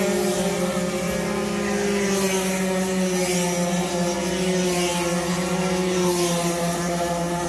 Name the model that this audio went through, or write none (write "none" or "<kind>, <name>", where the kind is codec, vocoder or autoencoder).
none